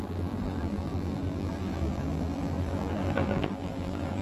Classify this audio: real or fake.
fake